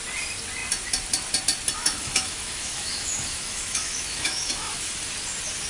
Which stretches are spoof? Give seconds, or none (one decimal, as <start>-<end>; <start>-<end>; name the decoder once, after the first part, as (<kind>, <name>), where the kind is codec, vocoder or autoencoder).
1.8-4.9 (autoencoder, DAC-VAE)